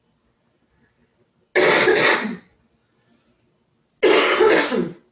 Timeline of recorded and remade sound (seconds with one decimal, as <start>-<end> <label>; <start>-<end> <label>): 0.0-5.1 recorded